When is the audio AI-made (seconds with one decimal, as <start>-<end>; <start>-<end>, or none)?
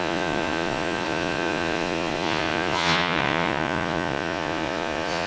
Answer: 0.0-5.3